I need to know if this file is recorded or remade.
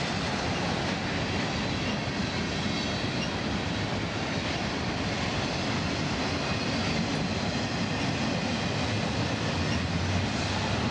recorded